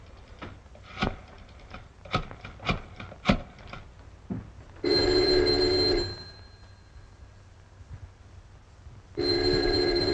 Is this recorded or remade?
recorded